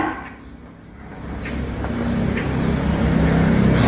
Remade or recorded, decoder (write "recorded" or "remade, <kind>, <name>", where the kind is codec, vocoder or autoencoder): recorded